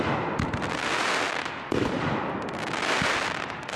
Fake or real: real